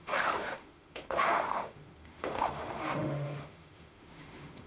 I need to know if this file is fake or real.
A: fake